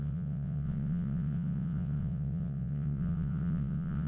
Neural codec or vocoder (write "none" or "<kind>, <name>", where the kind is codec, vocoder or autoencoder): vocoder, WaveNeXt